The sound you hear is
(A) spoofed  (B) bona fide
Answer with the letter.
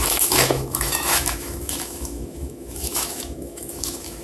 A